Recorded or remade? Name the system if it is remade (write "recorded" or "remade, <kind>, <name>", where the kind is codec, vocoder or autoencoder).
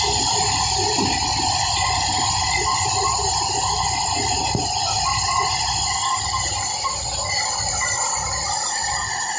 remade, vocoder, BigVGAN v2